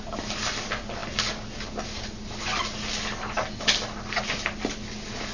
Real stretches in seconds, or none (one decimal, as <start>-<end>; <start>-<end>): 0.0-5.3